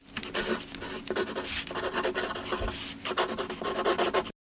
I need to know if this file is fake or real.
real